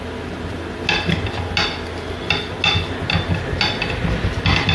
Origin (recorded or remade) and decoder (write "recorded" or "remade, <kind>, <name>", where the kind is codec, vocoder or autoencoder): recorded